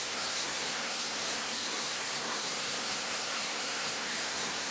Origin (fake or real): fake